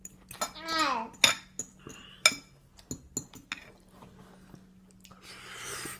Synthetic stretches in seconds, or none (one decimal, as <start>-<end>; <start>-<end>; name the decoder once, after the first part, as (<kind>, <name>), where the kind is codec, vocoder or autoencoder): none